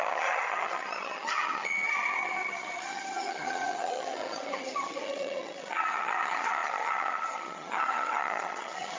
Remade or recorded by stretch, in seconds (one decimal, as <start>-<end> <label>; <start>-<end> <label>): 0.0-9.0 remade